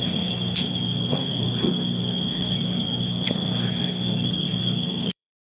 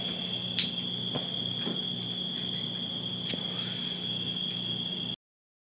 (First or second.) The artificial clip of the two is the first